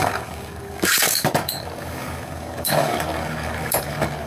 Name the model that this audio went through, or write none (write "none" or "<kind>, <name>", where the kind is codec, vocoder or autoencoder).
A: codec, DAC